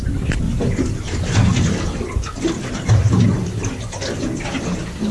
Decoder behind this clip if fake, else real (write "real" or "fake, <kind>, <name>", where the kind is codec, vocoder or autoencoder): real